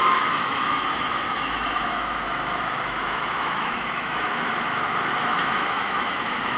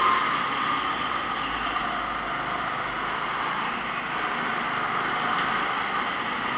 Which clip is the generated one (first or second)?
first